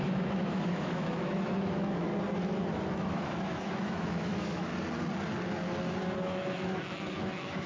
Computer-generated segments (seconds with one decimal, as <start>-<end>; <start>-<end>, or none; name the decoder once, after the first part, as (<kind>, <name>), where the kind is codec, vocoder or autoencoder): 0.0-2.1 (autoencoder, DAC-VAE); 2.7-4.7; 6.2-7.7